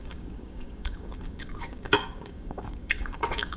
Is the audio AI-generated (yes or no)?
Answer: yes